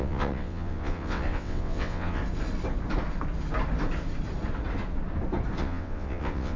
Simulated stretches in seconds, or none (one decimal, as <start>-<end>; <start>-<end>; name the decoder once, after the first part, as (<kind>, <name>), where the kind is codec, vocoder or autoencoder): 0.0-2.2 (vocoder, WaveNeXt); 5.6-6.6